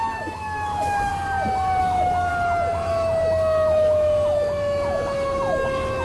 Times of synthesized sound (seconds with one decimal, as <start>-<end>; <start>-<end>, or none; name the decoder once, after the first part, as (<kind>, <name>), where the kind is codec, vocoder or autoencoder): 0.0-1.1 (autoencoder, DAC-VAE); 1.8-2.3; 2.9-6.0